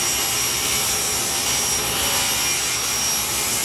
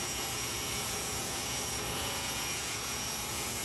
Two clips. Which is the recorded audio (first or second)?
first